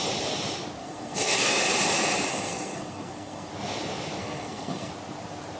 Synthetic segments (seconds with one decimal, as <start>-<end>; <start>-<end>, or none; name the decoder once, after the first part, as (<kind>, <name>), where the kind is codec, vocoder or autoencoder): 0.8-1.6 (codec, SNAC); 2.3-3.5; 4.2-4.9